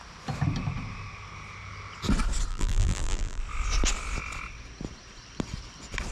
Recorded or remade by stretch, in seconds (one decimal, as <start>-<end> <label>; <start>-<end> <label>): 0.0-2.5 recorded; 2.5-3.4 remade; 3.4-6.1 recorded